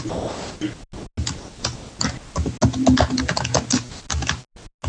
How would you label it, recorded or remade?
recorded